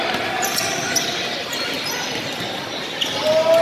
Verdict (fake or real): real